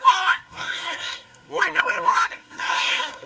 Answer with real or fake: fake